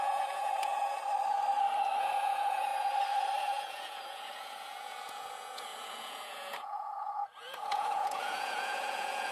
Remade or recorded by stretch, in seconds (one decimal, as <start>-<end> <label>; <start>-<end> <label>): 0.0-1.0 remade; 1.0-2.0 recorded; 2.0-2.7 remade; 2.7-3.4 recorded; 3.4-9.3 remade